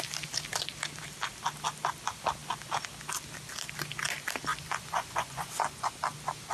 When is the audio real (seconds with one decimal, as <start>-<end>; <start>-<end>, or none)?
0.0-4.5; 5.9-6.5